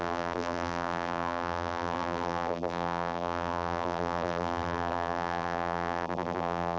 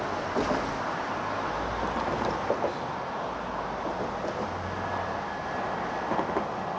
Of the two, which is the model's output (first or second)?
first